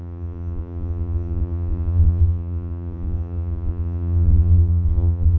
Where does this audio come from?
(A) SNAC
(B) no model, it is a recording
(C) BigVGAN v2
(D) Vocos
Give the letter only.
D